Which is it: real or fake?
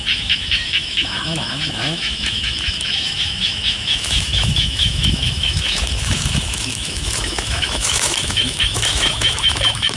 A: fake